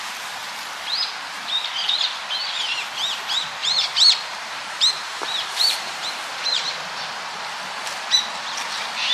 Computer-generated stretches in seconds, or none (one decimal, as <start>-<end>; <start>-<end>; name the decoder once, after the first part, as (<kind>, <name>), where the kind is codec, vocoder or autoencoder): 3.6-6.7 (vocoder, BigVGAN v2)